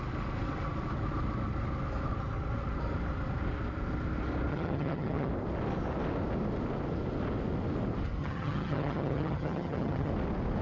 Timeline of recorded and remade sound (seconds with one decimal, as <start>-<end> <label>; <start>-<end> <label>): 0.0-4.5 recorded; 4.5-5.3 remade; 5.3-8.2 recorded; 8.2-10.1 remade; 10.1-10.6 recorded